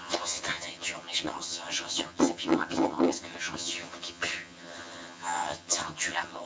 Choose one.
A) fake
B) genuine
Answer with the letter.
A